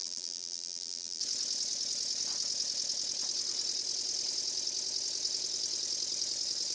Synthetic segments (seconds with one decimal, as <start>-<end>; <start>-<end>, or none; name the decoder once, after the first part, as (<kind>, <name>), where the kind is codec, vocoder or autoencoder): 0.0-1.2 (vocoder, BigVGAN v2)